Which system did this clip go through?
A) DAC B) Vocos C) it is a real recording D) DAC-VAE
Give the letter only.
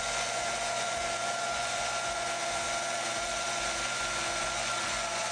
B